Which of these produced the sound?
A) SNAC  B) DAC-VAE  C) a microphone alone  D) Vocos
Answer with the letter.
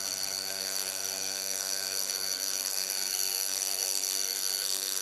A